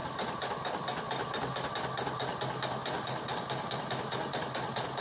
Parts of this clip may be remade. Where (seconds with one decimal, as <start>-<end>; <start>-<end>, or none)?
none